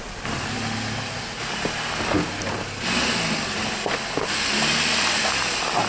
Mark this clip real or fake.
real